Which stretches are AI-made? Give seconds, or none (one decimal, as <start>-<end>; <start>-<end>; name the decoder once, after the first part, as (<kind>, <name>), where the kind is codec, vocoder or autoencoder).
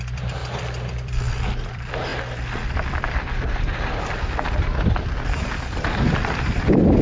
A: 0.0-0.4 (vocoder, BigVGAN v2); 0.9-7.0